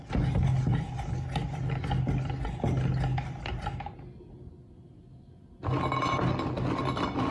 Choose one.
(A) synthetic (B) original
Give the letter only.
B